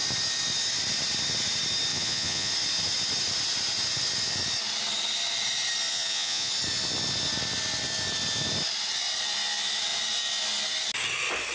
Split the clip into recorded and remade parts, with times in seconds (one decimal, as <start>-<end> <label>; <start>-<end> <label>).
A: 0.0-1.9 recorded; 1.9-2.5 remade; 2.5-5.9 recorded; 5.9-6.5 remade; 6.5-11.5 recorded